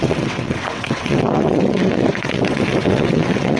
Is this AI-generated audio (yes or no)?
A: yes